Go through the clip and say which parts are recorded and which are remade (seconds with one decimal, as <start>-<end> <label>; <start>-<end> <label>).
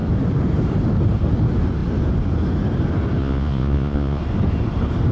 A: 0.0-3.2 recorded; 3.2-4.2 remade; 4.2-5.1 recorded